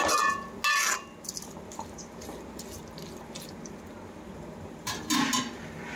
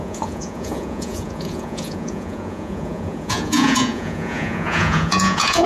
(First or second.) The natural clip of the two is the first